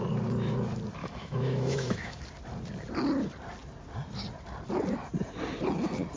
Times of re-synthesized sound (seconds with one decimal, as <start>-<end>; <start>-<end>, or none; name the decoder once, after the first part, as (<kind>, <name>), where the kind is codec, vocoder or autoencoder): 1.0-2.2 (autoencoder, DAC-VAE)